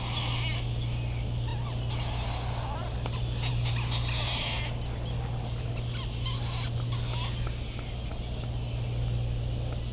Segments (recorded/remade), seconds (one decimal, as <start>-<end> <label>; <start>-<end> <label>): 0.0-9.9 recorded